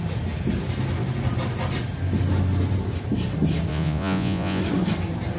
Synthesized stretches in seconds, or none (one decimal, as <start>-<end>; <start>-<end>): 3.7-4.6